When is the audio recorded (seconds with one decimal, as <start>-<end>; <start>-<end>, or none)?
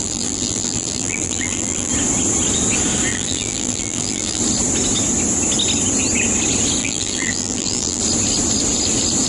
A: 1.9-3.1; 4.4-6.8; 8.0-9.3